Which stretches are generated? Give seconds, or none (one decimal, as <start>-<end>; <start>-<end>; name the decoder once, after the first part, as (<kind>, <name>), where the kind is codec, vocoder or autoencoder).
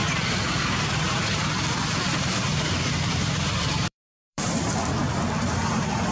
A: 1.9-6.1 (vocoder, BigVGAN v2)